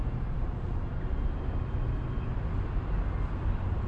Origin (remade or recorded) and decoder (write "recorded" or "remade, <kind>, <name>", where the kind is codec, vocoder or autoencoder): recorded